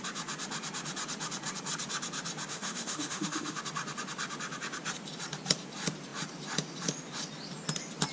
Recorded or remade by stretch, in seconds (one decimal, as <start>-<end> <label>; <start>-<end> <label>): 0.0-2.5 recorded; 2.5-3.6 remade; 3.6-8.1 recorded